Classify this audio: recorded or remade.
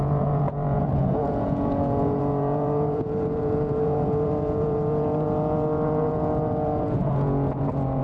remade